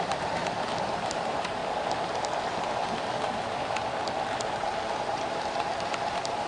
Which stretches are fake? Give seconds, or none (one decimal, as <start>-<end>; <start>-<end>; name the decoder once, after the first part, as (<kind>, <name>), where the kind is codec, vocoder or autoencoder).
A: 0.0-0.4 (vocoder, BigVGAN v2); 1.1-1.6; 2.4-2.8; 5.0-6.5